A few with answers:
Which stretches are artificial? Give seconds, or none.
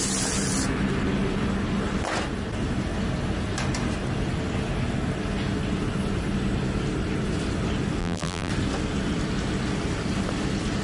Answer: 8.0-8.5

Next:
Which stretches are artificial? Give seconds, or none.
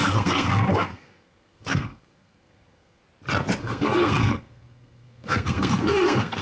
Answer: 0.0-3.0; 3.6-6.4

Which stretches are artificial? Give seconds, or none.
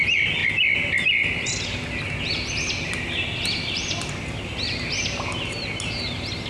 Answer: none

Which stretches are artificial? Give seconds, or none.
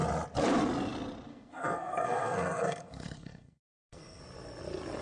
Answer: 1.3-4.2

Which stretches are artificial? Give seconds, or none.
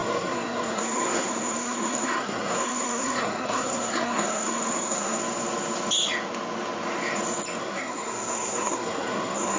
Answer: 0.0-5.2; 7.6-9.6